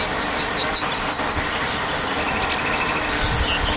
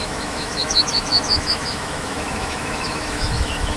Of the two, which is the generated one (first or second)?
second